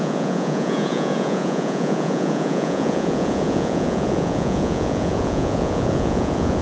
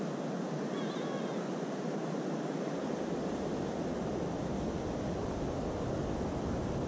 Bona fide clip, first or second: second